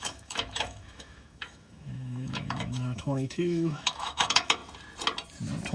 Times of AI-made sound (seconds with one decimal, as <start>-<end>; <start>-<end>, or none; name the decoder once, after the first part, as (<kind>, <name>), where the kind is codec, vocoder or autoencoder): 0.0-4.6 (autoencoder, DAC-VAE)